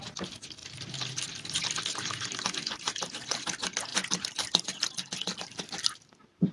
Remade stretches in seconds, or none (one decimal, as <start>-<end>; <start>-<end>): 3.9-6.5